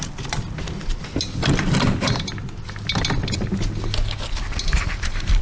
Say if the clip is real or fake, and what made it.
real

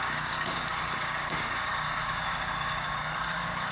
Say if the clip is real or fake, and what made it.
fake, codec, DAC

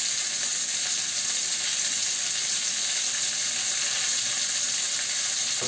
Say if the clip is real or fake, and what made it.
real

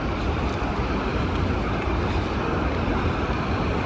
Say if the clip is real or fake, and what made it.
real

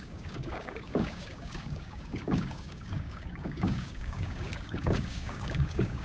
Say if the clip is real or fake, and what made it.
fake, codec, DAC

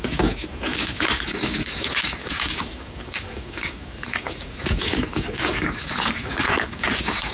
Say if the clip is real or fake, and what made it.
fake, codec, DAC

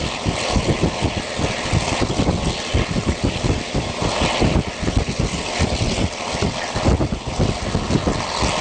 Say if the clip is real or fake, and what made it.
real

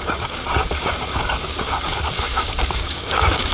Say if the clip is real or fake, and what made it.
fake, codec, DAC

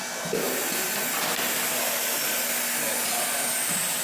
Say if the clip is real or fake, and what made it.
real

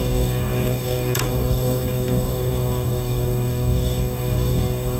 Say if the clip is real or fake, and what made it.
fake, codec, DAC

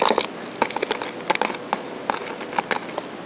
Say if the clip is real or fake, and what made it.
real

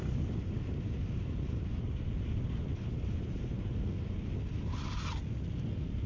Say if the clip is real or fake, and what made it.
real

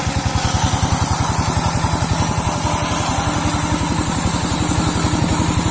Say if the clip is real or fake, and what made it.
real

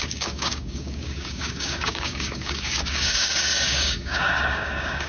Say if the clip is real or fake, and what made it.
fake, codec, DAC